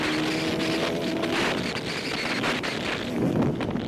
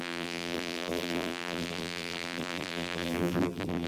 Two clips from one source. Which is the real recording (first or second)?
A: first